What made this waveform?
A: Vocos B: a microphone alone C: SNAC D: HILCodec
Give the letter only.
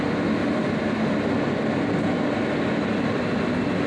B